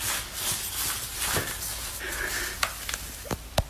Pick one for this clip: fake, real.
real